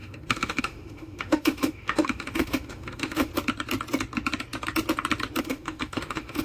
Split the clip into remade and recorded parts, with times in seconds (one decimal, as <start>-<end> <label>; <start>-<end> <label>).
0.0-3.3 remade; 3.3-5.4 recorded; 5.4-6.4 remade

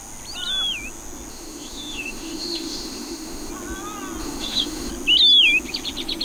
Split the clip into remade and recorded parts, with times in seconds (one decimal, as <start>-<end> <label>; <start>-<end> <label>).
0.0-1.3 recorded; 1.3-3.5 remade; 3.5-4.2 recorded; 4.2-4.9 remade; 4.9-6.2 recorded